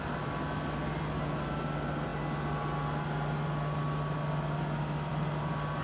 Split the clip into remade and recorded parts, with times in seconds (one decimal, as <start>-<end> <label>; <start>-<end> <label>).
0.0-5.8 recorded